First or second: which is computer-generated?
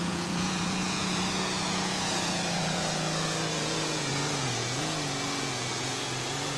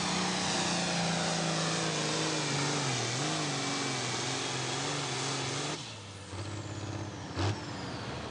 first